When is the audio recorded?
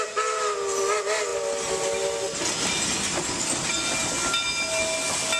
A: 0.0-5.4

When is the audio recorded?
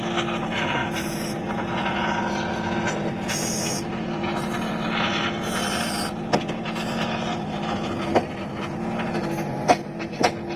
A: 0.0-10.6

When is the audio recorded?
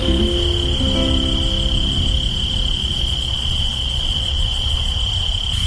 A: 0.0-2.8; 5.0-5.7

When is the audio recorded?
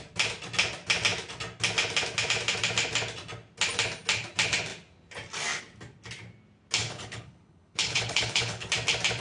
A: 0.0-6.8; 8.7-9.2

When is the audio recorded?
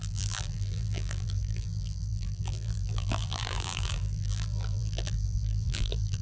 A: none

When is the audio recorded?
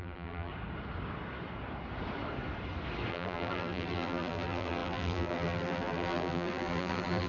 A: 0.5-3.1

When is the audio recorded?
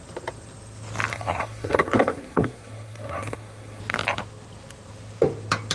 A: 0.0-1.1; 3.8-5.7